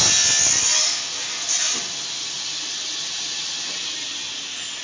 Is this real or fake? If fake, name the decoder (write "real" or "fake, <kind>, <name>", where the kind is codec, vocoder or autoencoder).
real